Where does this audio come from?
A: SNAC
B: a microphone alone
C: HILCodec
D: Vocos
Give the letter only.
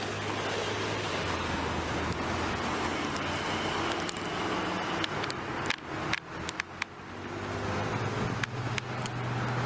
B